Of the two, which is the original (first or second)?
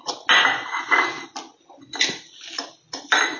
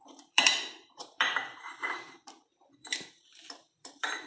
first